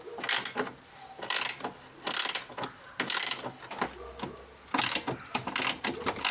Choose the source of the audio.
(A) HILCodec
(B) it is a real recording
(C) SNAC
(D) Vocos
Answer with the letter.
B